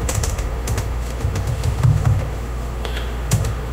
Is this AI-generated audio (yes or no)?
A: yes